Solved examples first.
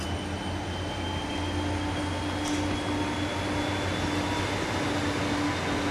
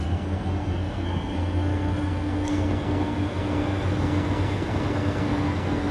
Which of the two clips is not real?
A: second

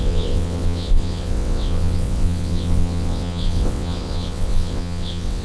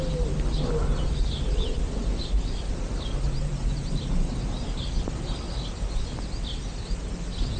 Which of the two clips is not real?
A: first